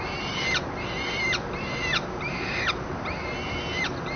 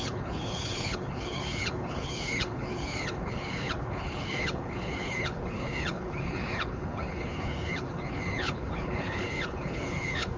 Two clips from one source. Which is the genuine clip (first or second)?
first